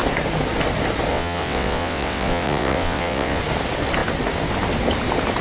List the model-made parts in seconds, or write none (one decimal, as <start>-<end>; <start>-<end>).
1.1-3.4